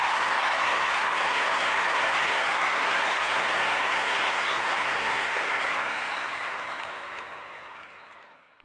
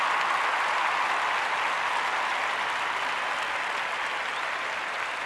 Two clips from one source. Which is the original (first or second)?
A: second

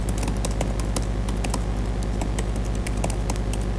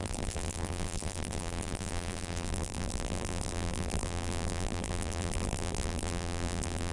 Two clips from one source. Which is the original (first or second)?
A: first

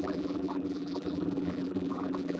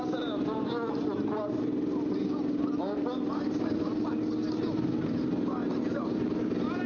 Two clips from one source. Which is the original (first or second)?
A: second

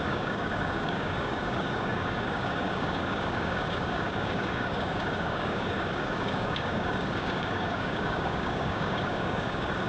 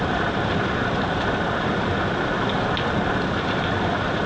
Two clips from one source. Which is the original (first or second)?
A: second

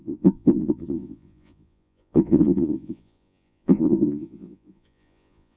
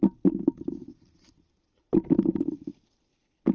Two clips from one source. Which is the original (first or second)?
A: second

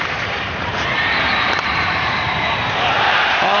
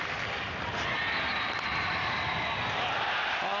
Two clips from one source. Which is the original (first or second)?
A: second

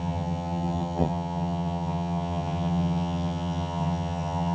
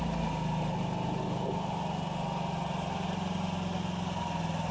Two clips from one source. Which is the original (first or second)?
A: second